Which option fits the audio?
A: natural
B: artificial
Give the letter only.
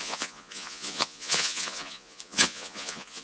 B